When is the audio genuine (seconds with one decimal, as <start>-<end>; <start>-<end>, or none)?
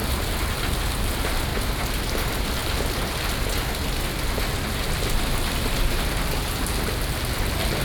0.0-7.8